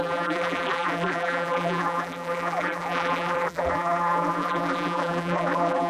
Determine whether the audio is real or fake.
fake